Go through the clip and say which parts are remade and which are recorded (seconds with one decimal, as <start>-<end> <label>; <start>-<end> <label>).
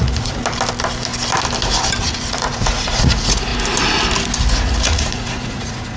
0.0-0.4 remade; 0.4-2.2 recorded; 2.2-3.5 remade; 3.5-4.4 recorded; 4.4-6.0 remade